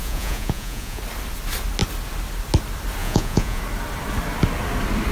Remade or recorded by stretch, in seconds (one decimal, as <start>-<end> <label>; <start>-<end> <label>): 0.0-1.0 remade; 1.0-3.0 recorded; 3.0-3.6 remade; 3.6-5.1 recorded